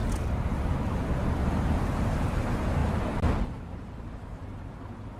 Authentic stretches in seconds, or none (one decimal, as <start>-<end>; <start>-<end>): 2.2-2.8; 3.8-5.2